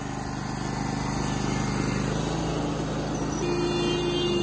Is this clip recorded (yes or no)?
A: yes